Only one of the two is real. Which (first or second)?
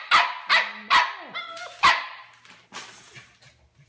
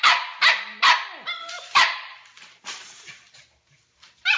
first